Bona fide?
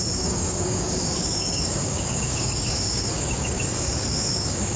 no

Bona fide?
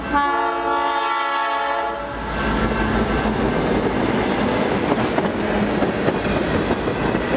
yes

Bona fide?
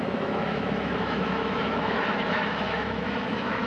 no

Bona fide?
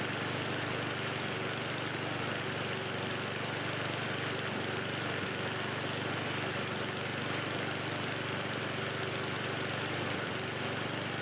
yes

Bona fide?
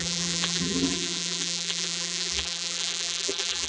no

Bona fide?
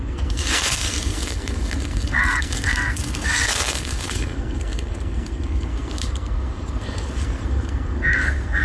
no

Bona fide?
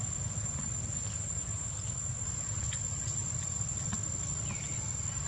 yes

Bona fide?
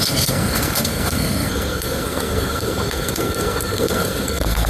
no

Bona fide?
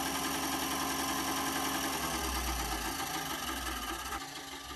yes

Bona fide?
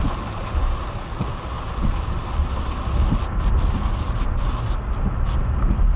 yes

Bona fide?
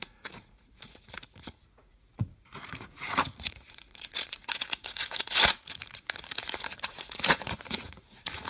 no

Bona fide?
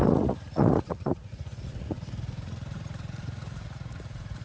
no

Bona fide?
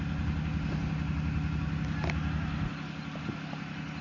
yes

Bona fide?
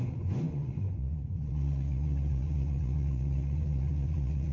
no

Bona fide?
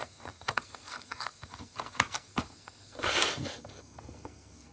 no